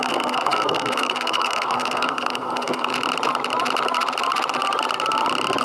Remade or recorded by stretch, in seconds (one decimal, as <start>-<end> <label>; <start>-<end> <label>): 0.0-2.9 remade; 2.9-5.6 recorded